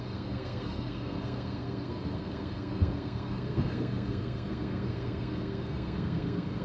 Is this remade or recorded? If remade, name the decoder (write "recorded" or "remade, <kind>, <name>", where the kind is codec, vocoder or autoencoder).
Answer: remade, codec, SNAC